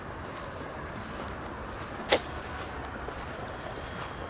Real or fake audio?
real